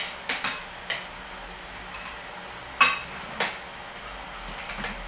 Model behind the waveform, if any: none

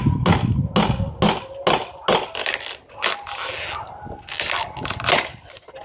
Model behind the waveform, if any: none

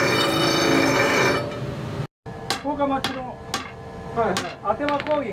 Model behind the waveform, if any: none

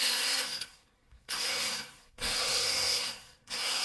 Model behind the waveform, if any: codec, SNAC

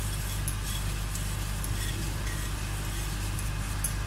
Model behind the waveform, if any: none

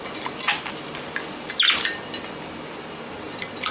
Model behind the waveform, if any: none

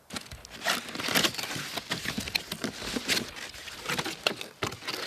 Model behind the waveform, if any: none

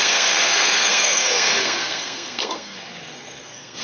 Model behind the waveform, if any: codec, SNAC